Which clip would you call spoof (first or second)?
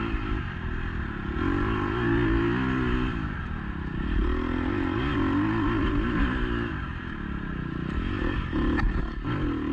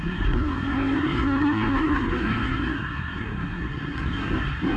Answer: second